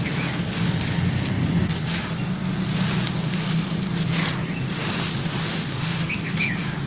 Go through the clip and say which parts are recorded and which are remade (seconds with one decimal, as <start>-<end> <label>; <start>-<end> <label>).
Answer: 0.0-5.2 recorded; 5.2-6.1 remade; 6.1-6.9 recorded

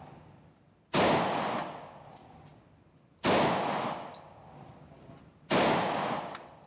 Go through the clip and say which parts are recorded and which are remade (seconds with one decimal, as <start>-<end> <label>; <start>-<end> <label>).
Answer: 0.0-6.7 recorded

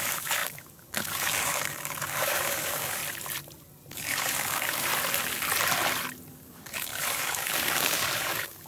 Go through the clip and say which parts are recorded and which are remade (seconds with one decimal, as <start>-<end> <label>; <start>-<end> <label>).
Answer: 0.0-3.0 remade; 3.0-3.9 recorded; 3.9-4.9 remade; 4.9-6.3 recorded; 6.3-8.7 remade

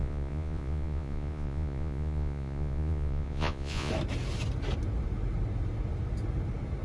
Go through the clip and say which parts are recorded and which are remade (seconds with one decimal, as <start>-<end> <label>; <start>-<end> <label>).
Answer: 0.0-3.9 remade; 3.9-6.8 recorded

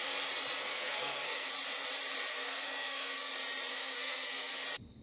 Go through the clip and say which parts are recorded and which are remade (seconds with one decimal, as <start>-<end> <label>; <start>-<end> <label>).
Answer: 0.0-0.7 recorded; 0.7-1.5 remade; 1.5-2.3 recorded; 2.3-3.3 remade; 3.3-3.7 recorded; 3.7-4.5 remade; 4.5-5.0 recorded

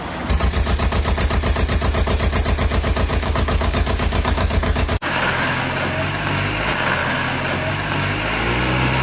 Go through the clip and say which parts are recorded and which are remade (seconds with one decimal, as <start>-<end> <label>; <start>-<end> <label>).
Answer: 0.0-3.1 recorded; 3.1-5.6 remade; 5.6-9.0 recorded

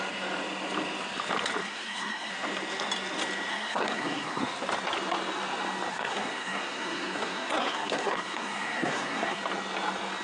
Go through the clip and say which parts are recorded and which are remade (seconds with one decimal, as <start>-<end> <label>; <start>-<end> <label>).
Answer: 0.0-1.6 recorded; 1.6-2.3 remade; 2.3-3.5 recorded; 3.5-4.4 remade; 4.4-5.9 recorded; 5.9-9.4 remade; 9.4-10.2 recorded